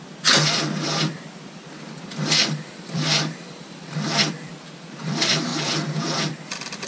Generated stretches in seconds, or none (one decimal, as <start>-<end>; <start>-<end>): 0.0-6.9